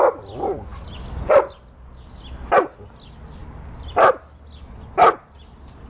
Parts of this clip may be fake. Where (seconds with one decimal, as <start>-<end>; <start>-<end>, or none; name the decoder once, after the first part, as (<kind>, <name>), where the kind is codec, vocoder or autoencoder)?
none